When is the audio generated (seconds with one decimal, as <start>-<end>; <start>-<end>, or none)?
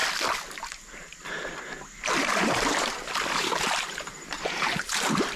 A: 0.7-1.1; 2.2-5.4